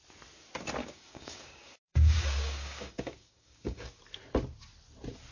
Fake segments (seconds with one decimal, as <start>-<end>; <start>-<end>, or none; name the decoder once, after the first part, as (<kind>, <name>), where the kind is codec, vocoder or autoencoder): 0.8-4.0 (codec, DAC)